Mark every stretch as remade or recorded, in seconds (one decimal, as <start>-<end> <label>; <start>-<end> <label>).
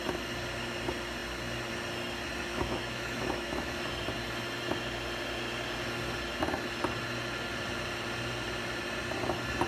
0.0-2.5 recorded; 2.5-3.7 remade; 3.7-9.7 recorded